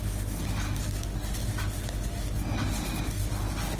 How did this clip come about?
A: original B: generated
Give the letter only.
A